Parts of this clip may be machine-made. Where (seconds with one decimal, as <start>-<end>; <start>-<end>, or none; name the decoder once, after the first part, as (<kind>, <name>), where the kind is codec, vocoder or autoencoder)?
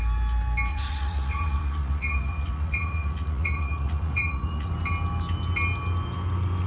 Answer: 0.7-4.7 (vocoder, Vocos)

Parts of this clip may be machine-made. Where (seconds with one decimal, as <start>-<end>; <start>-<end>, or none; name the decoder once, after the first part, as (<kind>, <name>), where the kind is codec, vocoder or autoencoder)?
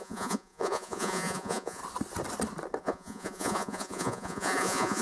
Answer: 0.0-1.8 (vocoder, Vocos); 2.8-5.0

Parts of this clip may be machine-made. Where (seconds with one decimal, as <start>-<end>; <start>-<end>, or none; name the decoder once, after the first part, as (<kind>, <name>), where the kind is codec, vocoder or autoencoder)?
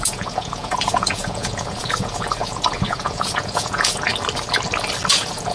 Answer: 0.0-4.1 (vocoder, Vocos); 5.1-5.5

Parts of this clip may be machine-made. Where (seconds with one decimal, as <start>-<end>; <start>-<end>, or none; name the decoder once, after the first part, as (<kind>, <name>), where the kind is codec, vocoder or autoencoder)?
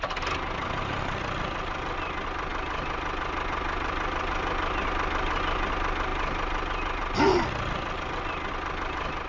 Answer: none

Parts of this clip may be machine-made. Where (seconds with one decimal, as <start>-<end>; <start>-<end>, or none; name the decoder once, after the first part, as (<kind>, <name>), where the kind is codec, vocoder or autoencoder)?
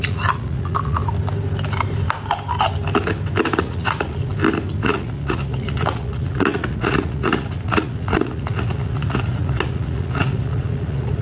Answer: 0.0-1.0 (vocoder, Vocos); 3.6-4.3; 4.8-11.2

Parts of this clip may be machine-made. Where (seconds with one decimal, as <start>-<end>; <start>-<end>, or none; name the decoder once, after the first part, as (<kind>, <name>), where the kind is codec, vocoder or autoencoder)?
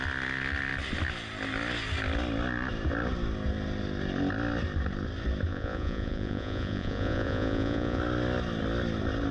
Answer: 5.5-8.0 (vocoder, Vocos)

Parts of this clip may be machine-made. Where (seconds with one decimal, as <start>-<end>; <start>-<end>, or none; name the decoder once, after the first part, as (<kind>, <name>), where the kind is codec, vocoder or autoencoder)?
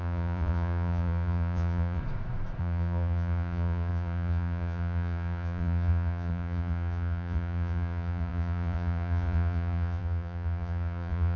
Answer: 0.0-2.0 (vocoder, Vocos); 2.6-11.4